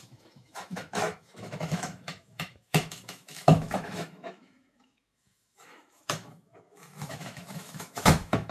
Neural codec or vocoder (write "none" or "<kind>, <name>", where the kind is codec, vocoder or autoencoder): autoencoder, DAC-VAE